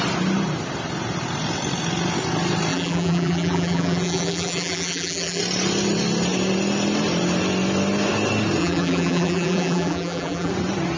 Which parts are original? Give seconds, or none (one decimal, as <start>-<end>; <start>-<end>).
0.0-2.7; 5.4-8.6; 10.5-11.0